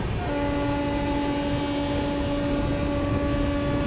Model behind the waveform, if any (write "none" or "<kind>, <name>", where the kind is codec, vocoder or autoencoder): none